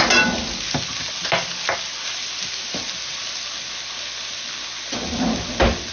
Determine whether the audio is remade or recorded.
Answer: recorded